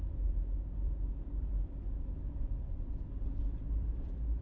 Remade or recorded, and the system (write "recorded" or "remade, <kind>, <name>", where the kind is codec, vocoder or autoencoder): remade, vocoder, BigVGAN v2